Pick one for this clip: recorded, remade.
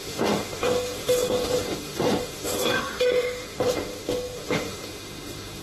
remade